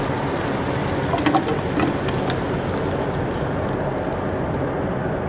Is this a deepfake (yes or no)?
no